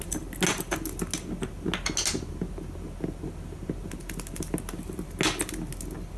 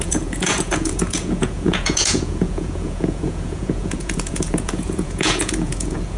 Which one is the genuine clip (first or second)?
first